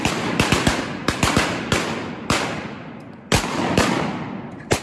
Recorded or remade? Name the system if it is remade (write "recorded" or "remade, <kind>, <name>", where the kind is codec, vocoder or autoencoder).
recorded